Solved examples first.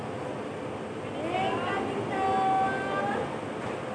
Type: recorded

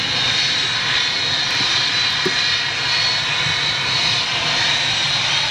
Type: recorded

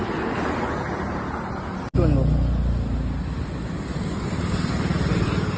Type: recorded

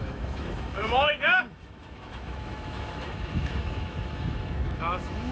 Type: remade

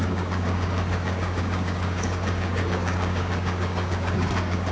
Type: remade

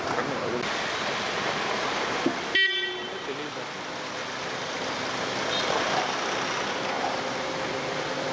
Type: recorded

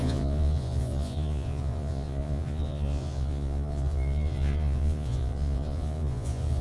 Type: remade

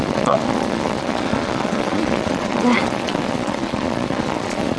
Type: remade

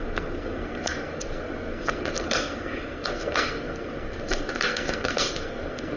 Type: remade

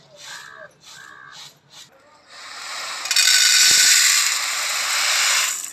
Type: recorded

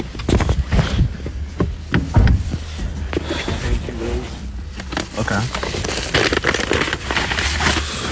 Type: recorded